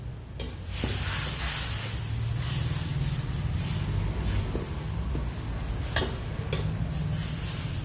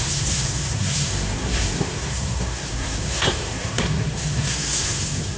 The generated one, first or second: second